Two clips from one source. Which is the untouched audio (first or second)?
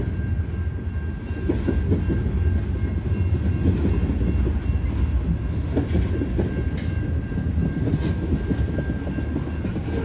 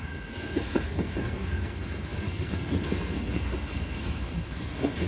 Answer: first